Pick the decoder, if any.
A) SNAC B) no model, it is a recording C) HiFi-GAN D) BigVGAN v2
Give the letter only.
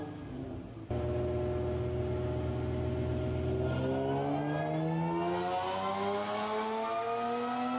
B